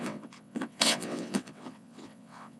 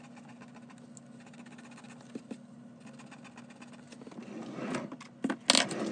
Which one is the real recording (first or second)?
second